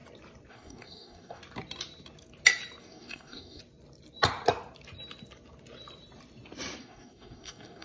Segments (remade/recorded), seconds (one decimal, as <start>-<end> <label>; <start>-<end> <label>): 0.0-0.5 recorded; 0.5-1.4 remade; 1.4-2.8 recorded; 2.8-3.6 remade; 3.6-6.8 recorded; 6.8-7.8 remade